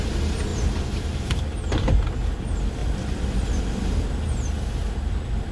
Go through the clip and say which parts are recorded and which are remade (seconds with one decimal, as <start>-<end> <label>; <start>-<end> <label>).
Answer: 0.0-2.8 recorded; 2.8-3.6 remade; 3.6-5.5 recorded

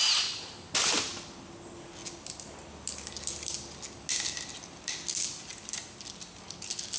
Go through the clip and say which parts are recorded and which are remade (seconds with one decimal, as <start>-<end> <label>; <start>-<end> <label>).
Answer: 0.0-7.0 recorded